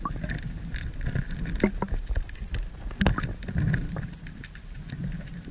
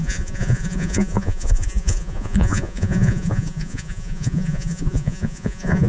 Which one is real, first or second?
first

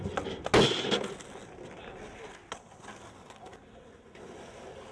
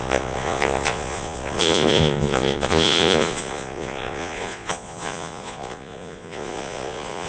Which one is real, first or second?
first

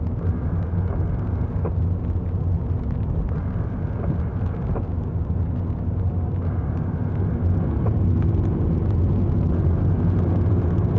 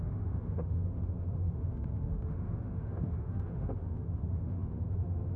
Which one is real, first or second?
first